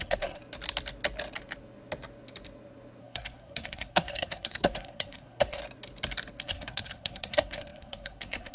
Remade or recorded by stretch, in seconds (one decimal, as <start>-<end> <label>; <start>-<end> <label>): 0.0-0.4 remade; 0.4-3.0 recorded; 3.0-5.6 remade; 5.6-6.4 recorded; 6.4-8.5 remade